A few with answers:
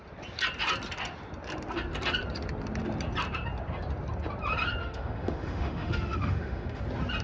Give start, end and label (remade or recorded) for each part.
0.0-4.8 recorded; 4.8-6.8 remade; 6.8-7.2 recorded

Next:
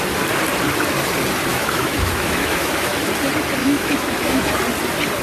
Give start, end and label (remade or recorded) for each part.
0.0-1.5 recorded; 1.5-2.9 remade; 2.9-3.6 recorded; 3.6-4.5 remade; 4.5-5.2 recorded

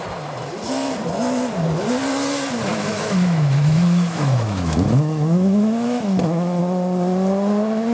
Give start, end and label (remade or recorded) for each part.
0.0-2.7 recorded; 2.7-6.6 remade; 6.6-7.9 recorded

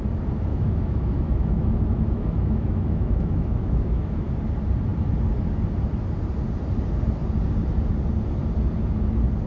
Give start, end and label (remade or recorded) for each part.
0.0-0.5 recorded; 0.5-4.3 remade; 4.3-9.5 recorded